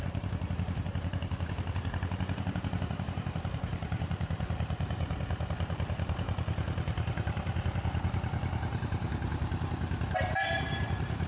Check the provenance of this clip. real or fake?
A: fake